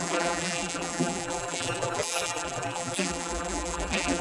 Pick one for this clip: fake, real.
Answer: fake